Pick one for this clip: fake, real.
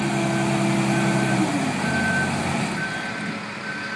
real